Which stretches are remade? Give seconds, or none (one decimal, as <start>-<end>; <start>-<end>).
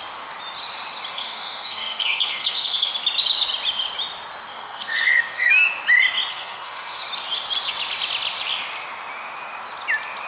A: 1.1-2.9; 4.5-5.5; 6.3-7.1